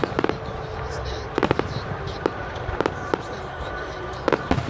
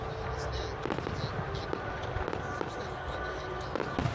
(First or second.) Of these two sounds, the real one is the second